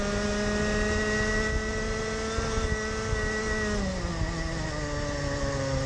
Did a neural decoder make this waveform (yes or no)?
no